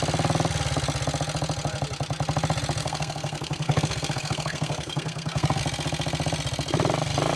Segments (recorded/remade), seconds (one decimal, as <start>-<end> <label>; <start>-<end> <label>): 0.0-2.8 recorded; 2.8-5.6 remade; 5.6-7.4 recorded